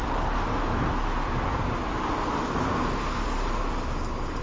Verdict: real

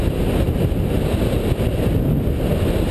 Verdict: real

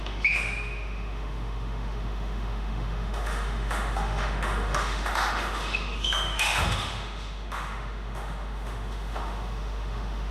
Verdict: fake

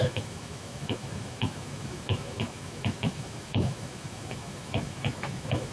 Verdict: fake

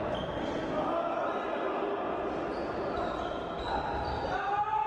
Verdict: real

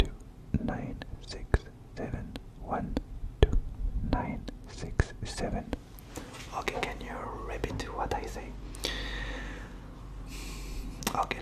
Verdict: real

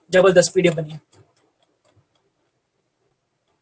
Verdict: real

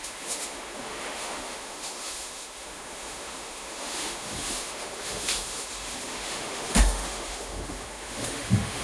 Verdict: fake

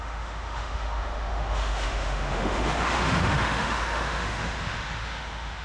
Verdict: fake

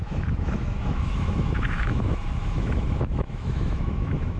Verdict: fake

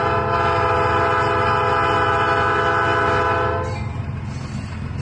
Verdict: real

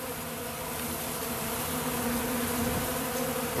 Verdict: real